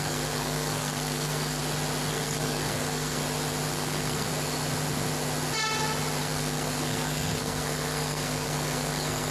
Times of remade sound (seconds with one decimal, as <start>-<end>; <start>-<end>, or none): 0.0-1.6; 2.1-3.2; 3.7-4.3; 6.2-9.3